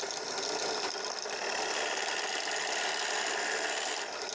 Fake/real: real